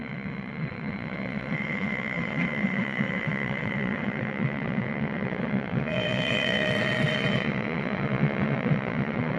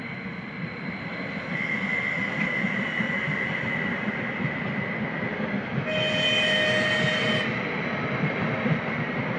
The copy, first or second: first